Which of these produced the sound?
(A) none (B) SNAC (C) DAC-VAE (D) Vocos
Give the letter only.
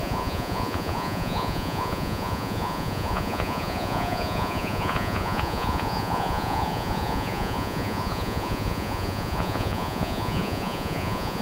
D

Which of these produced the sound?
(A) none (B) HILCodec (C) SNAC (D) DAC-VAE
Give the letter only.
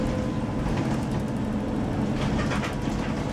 A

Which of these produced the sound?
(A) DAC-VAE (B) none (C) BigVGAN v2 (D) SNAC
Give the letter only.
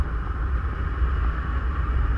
B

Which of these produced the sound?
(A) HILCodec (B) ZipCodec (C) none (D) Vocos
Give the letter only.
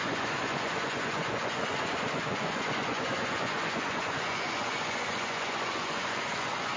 D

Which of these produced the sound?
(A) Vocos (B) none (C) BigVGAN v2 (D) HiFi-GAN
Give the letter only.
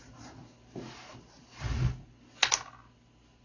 B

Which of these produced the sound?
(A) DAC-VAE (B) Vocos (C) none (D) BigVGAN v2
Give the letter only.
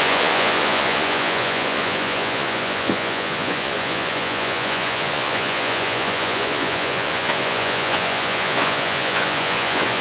B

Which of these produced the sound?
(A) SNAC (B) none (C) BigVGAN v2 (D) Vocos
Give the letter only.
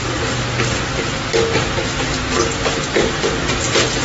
B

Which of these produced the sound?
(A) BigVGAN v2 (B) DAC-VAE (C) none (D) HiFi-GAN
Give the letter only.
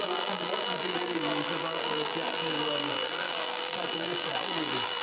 A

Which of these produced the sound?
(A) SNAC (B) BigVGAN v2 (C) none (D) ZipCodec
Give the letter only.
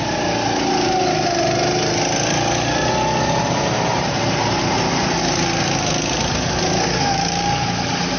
C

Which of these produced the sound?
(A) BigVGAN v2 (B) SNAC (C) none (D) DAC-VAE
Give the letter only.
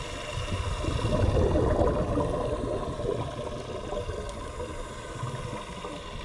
C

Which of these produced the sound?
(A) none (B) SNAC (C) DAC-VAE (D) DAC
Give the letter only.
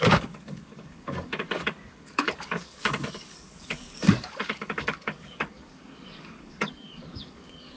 D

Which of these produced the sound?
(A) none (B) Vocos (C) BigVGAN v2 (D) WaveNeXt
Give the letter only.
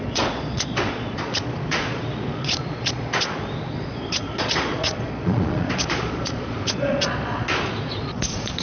B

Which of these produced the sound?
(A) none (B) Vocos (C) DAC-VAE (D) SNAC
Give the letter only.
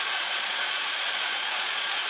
B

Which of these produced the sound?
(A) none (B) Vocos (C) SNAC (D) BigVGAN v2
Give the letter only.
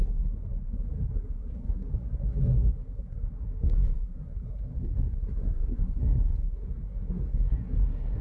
C